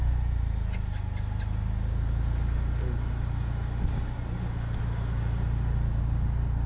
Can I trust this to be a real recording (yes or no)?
yes